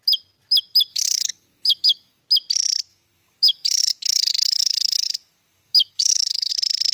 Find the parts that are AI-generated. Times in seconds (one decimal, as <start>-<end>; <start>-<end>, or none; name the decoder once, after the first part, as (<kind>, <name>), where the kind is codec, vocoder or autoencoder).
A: 0.9-2.2 (codec, DAC); 2.9-6.5